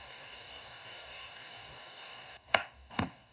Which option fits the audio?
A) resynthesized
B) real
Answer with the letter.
A